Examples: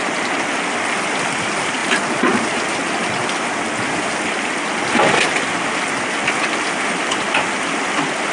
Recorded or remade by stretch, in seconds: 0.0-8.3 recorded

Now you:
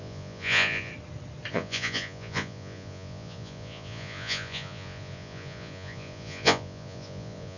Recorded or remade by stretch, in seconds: 0.0-0.9 remade; 0.9-1.5 recorded; 1.5-7.6 remade

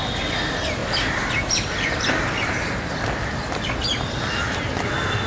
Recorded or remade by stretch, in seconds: 0.0-5.3 recorded

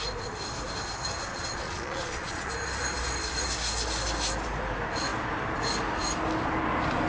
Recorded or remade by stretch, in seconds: 0.0-1.3 recorded; 1.3-2.5 remade; 2.5-7.1 recorded